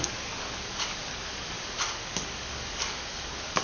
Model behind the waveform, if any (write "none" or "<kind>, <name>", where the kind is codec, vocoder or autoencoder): codec, DAC